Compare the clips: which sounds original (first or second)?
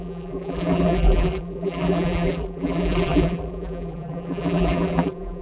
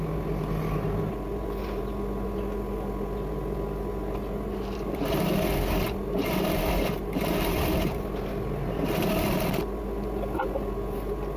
second